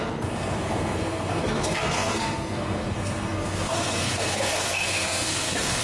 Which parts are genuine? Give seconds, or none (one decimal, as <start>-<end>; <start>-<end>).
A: none